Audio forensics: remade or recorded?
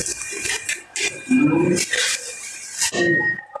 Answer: recorded